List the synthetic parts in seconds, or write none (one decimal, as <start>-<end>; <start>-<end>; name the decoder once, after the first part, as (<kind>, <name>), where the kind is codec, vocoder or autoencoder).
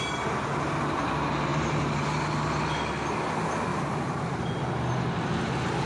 1.5-2.2 (vocoder, BigVGAN v2); 3.7-4.6